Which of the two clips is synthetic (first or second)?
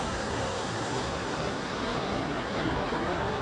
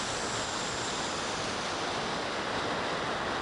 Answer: first